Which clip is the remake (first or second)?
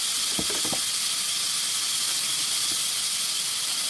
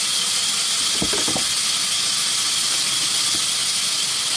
first